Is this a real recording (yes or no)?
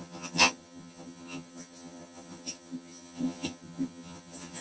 no